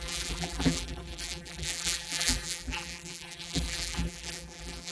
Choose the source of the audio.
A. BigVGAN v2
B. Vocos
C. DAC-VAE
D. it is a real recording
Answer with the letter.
A